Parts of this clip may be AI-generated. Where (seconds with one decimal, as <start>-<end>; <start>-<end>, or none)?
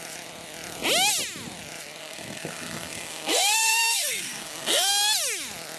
2.0-4.9